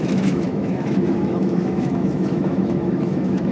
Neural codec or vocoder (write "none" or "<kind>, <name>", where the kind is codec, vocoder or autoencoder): autoencoder, DAC-VAE